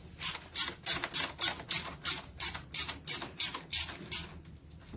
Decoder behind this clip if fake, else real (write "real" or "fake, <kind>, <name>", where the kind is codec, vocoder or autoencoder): real